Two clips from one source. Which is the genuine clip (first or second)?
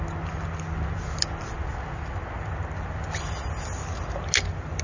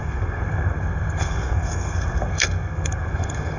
first